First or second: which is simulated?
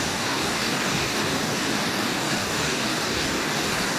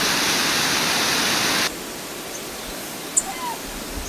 first